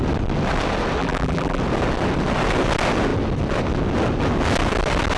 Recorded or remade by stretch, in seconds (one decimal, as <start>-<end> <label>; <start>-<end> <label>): 0.0-1.0 recorded; 1.0-1.6 remade; 1.6-5.2 recorded